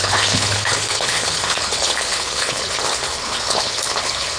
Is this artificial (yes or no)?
yes